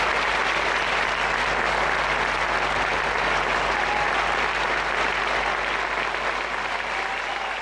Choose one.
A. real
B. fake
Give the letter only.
A